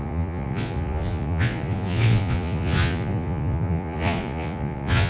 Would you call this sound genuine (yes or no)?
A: no